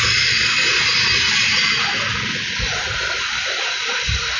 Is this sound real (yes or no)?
yes